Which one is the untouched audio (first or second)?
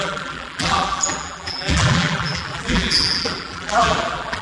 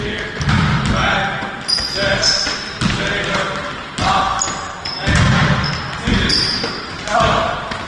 second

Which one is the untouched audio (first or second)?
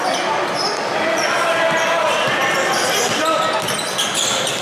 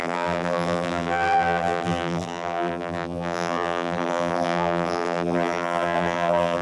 first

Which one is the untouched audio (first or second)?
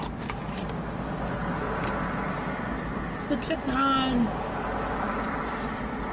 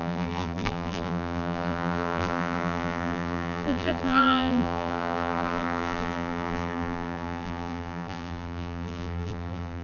first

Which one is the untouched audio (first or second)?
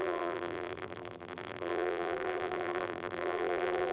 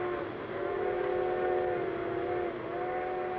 second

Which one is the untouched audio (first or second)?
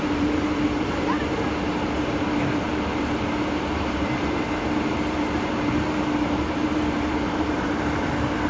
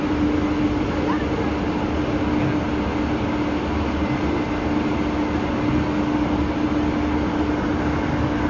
second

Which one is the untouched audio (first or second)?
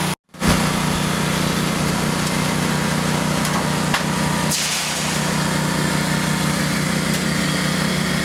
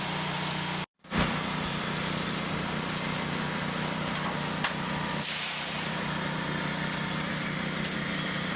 first